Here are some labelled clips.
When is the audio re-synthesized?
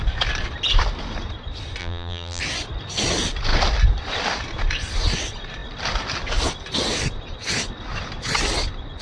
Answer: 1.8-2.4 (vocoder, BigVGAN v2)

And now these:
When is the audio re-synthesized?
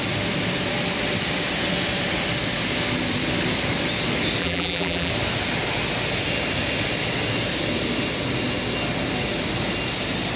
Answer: 4.4-5.1 (vocoder, BigVGAN v2)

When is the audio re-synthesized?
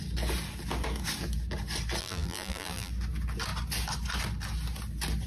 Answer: 2.0-2.9 (vocoder, BigVGAN v2)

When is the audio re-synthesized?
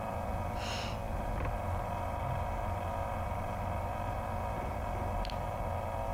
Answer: none